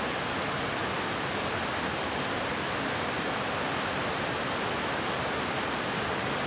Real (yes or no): yes